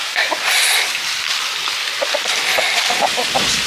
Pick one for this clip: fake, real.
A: real